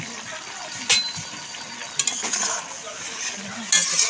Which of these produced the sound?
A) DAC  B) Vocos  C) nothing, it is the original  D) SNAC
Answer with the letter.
C